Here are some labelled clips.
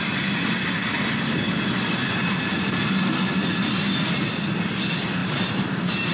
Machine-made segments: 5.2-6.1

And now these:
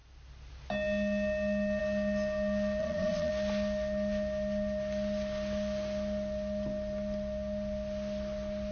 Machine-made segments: 2.8-3.3